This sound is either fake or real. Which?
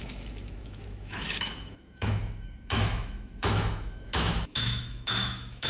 fake